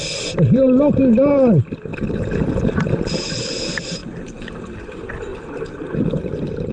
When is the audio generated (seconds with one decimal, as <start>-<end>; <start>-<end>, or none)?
1.9-3.0; 5.3-5.8